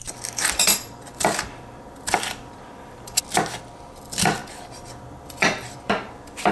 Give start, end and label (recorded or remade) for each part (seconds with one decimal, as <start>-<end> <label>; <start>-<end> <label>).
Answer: 0.0-3.2 remade; 3.2-3.8 recorded; 3.8-6.5 remade